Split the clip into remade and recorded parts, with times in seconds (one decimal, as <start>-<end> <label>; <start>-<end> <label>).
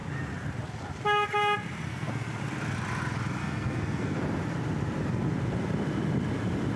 0.0-1.9 recorded; 1.9-2.4 remade; 2.4-3.4 recorded; 3.4-4.2 remade; 4.2-6.8 recorded